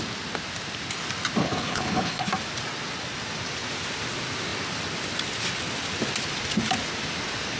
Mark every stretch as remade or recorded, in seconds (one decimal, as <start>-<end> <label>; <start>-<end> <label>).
0.0-1.4 recorded; 1.4-2.3 remade; 2.3-7.6 recorded